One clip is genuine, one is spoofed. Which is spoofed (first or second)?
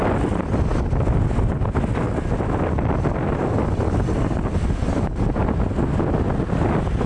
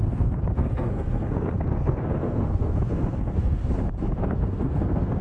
second